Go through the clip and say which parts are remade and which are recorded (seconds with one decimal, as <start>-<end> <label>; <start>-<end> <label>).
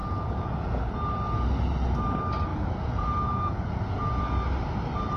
0.0-0.9 remade; 0.9-2.5 recorded; 2.5-4.2 remade; 4.2-5.2 recorded